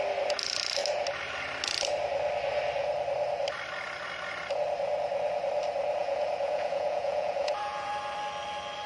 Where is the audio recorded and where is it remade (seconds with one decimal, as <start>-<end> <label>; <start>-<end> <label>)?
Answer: 0.0-6.0 recorded; 6.0-7.9 remade; 7.9-8.9 recorded